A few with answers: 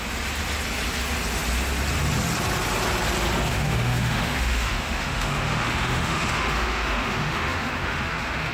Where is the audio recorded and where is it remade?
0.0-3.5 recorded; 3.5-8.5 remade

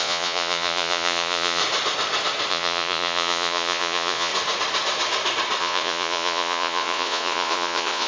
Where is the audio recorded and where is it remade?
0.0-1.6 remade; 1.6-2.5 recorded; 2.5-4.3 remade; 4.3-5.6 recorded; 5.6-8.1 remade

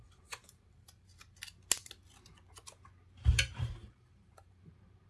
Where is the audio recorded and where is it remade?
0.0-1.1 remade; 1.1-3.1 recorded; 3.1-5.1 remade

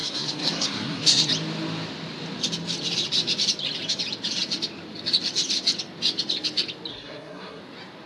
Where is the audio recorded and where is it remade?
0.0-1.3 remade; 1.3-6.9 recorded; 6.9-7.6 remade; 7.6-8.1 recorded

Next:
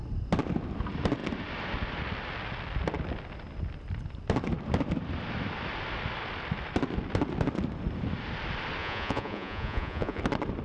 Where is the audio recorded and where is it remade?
0.0-8.8 recorded; 8.8-10.2 remade; 10.2-10.6 recorded

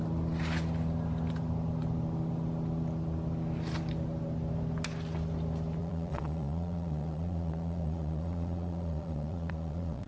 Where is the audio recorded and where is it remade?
0.0-5.8 recorded; 5.8-10.1 remade